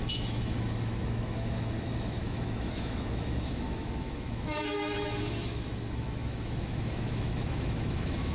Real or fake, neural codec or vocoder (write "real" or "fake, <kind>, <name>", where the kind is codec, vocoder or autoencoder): fake, autoencoder, DAC-VAE